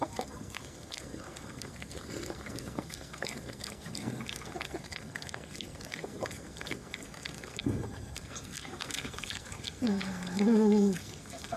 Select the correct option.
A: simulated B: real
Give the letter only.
A